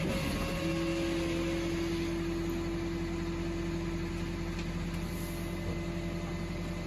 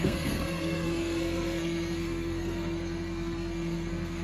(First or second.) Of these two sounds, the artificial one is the second